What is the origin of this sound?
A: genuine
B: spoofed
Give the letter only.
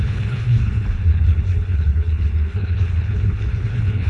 B